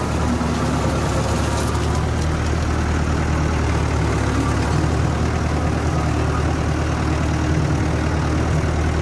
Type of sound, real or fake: real